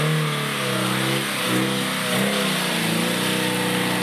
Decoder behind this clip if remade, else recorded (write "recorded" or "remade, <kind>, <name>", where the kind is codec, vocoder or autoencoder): recorded